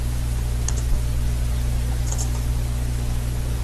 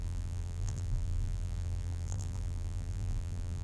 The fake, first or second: second